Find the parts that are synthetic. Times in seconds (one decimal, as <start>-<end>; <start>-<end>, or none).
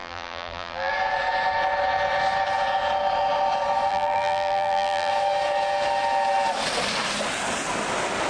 0.0-0.9; 3.9-5.1